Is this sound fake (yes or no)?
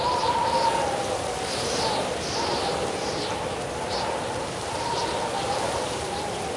yes